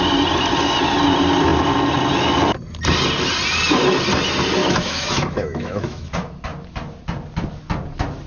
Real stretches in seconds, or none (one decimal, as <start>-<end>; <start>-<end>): 0.0-4.6; 6.1-8.3